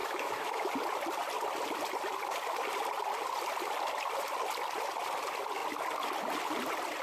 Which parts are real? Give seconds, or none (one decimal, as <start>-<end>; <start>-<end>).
0.7-7.0